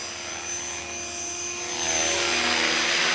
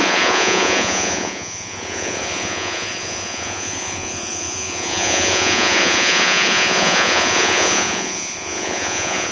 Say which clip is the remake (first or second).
second